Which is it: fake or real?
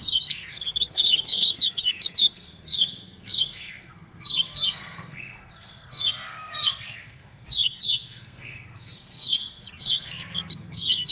fake